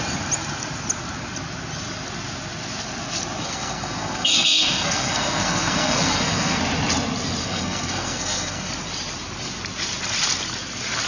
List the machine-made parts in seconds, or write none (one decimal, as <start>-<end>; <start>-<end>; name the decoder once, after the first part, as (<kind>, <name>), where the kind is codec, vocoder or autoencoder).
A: 3.4-6.6 (codec, SNAC); 7.4-8.7